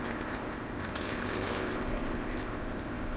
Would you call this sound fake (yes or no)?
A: yes